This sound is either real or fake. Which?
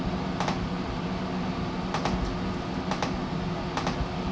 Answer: real